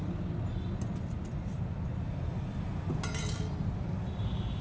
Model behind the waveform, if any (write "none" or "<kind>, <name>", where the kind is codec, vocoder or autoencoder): none